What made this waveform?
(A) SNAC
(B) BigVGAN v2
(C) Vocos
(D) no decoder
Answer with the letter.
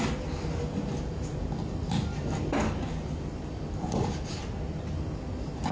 D